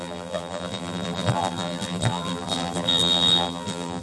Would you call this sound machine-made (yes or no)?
yes